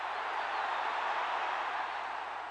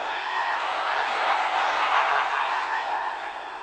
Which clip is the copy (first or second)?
second